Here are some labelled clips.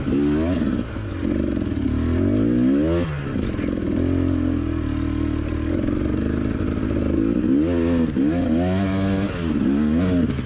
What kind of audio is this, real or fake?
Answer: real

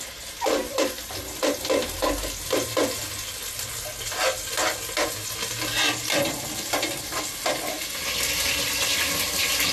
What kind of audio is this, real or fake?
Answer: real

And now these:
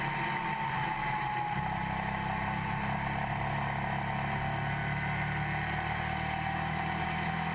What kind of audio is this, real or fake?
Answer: real